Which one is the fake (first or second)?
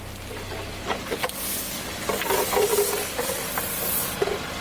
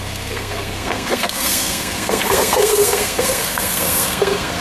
second